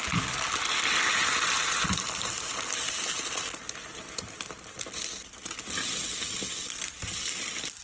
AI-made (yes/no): no